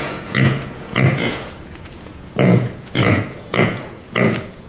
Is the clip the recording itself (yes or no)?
no